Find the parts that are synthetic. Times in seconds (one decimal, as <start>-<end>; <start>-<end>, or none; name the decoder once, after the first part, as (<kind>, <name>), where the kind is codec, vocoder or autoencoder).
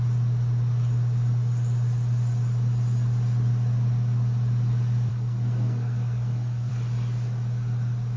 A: 5.1-6.7 (codec, SNAC)